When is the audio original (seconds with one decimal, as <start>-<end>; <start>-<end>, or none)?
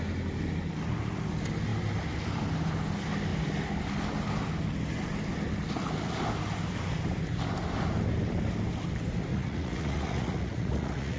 0.0-9.3